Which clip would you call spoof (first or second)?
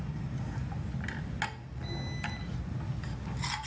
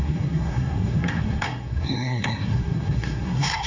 second